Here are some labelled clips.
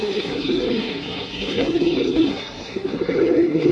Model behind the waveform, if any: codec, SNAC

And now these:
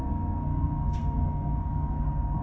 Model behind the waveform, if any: codec, SNAC